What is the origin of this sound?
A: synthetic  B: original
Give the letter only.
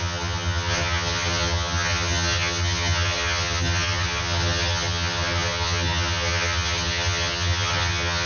A